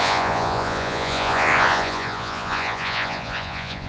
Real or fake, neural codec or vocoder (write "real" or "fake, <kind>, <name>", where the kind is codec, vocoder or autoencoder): fake, vocoder, Vocos